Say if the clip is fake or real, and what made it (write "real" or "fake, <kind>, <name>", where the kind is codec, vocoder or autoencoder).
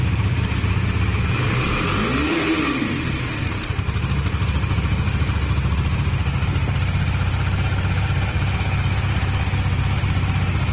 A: real